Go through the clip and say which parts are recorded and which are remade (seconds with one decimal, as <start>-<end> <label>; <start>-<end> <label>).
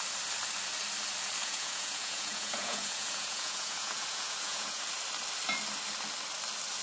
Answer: 0.0-1.4 recorded; 1.4-4.8 remade; 4.8-6.8 recorded